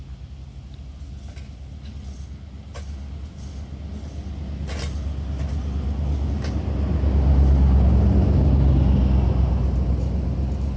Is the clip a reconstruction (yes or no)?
no